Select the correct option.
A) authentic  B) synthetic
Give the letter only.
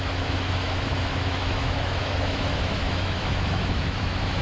B